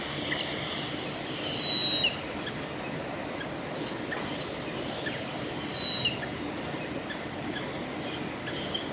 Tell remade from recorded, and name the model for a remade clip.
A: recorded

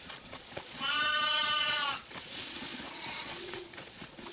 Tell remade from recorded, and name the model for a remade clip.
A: remade, vocoder, Vocos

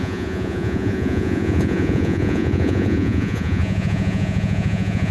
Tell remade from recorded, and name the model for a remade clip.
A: remade, vocoder, Vocos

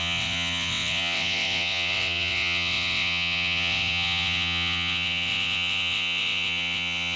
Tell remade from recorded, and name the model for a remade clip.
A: remade, vocoder, WaveNeXt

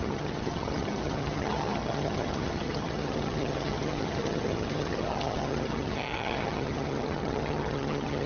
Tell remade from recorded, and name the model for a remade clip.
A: remade, vocoder, HiFi-GAN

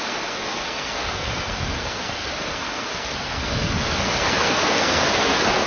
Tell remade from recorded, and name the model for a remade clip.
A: remade, codec, SNAC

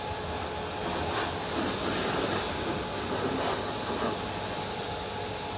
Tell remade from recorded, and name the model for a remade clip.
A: recorded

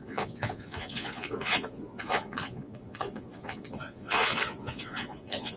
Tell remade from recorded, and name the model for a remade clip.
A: remade, vocoder, Vocos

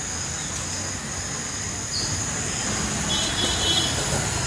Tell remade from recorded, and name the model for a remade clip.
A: recorded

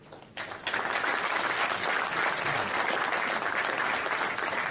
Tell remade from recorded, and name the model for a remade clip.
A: recorded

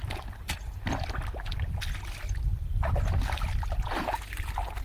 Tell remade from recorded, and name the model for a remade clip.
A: recorded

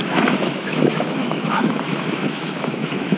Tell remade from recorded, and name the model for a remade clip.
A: remade, autoencoder, DAC-VAE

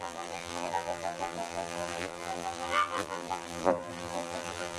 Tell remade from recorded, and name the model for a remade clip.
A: remade, vocoder, BigVGAN v2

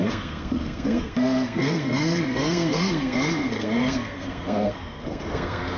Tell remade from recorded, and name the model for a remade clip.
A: remade, codec, SNAC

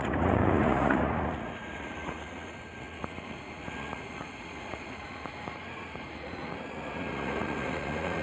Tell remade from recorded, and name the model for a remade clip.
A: remade, vocoder, Vocos